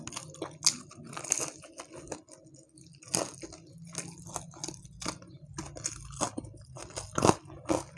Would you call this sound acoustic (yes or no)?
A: yes